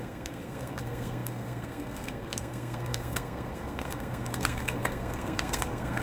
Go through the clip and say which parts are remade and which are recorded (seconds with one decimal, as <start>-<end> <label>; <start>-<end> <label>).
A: 0.0-6.0 remade